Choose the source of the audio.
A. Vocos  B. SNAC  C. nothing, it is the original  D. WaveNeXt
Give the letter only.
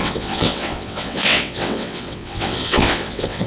D